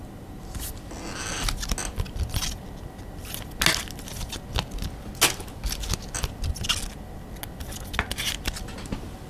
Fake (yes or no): no